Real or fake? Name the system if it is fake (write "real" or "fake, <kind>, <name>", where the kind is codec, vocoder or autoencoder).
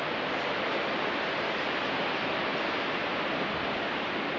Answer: real